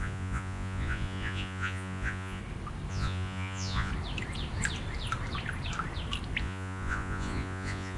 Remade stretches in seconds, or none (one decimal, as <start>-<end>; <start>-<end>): 0.0-2.4; 2.9-3.9; 6.4-8.0